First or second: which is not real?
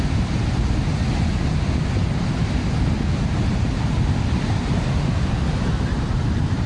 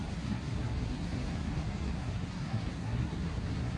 second